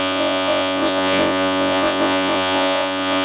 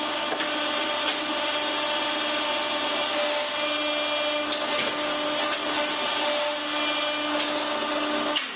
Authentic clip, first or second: second